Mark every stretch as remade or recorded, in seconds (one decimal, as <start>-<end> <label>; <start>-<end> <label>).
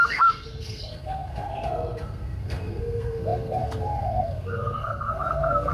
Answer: 0.0-5.7 remade